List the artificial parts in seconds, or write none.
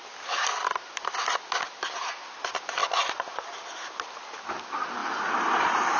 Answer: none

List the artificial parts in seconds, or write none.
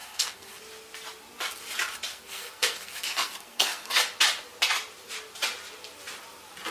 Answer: 0.0-0.6; 2.1-4.0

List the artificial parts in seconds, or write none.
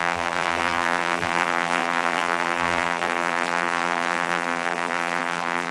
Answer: 0.0-5.7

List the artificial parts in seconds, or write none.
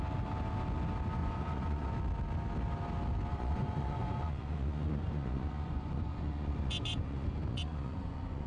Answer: 1.2-1.9; 3.3-8.5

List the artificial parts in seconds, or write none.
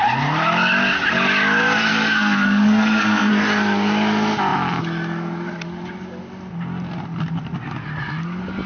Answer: 1.9-3.3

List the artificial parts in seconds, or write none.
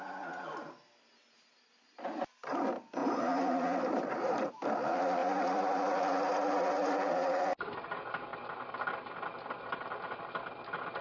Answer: 3.0-4.5; 5.2-7.4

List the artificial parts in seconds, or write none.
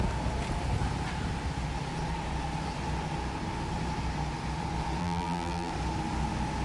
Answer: 5.0-5.7